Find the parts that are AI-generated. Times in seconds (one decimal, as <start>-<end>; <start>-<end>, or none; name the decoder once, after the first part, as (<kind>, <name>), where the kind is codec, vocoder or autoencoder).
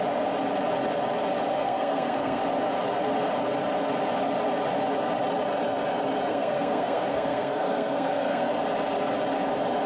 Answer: 1.5-2.4 (codec, SNAC); 6.3-8.5